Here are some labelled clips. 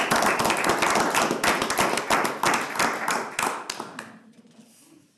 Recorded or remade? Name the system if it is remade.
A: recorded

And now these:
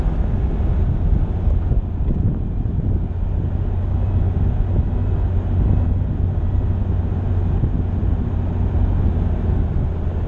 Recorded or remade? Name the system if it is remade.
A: recorded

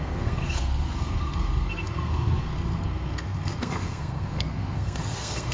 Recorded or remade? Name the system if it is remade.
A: remade, codec, SNAC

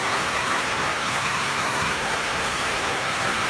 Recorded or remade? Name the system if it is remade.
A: remade, codec, SNAC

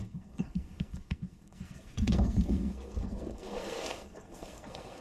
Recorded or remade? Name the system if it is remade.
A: remade, codec, SNAC